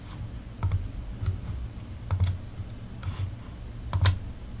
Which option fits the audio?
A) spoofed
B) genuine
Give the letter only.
B